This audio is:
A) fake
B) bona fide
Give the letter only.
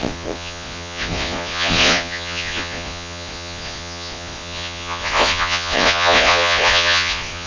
A